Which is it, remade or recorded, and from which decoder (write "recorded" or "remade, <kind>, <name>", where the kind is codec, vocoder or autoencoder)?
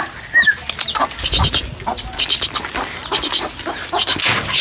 recorded